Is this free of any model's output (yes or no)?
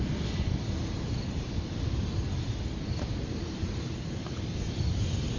yes